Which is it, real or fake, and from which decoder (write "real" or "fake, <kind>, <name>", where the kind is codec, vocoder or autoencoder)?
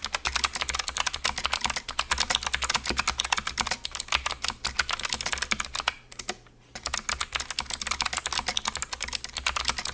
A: real